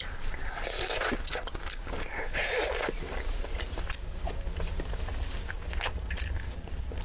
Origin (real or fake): real